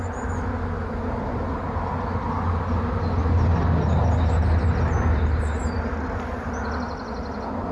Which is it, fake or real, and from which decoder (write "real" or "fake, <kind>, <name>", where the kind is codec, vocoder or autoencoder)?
real